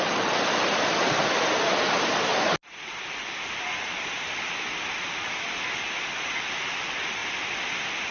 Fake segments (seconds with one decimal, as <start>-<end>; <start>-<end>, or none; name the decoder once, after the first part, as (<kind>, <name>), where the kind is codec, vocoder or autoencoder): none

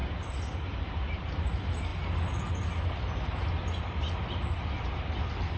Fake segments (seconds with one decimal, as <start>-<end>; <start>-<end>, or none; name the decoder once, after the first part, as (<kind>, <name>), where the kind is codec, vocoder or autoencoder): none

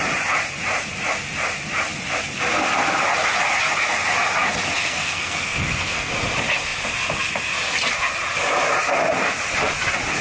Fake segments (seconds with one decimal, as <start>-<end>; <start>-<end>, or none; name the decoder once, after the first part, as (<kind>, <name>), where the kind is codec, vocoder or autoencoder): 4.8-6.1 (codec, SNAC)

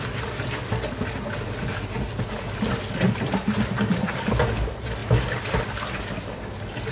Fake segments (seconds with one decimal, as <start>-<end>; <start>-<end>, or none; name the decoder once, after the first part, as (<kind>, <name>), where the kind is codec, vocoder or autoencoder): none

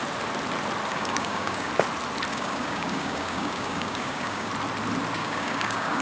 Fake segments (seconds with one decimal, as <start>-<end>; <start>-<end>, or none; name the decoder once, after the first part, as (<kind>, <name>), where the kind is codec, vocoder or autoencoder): 0.9-1.7 (codec, DAC); 2.3-4.5; 5.2-6.0

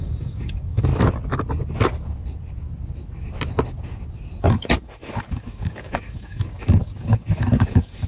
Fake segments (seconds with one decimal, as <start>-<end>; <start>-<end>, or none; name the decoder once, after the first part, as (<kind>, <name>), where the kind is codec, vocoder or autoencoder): 0.0-0.9 (codec, DAC); 4.4-8.1